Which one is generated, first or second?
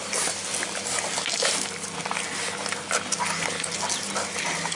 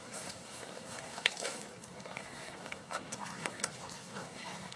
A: second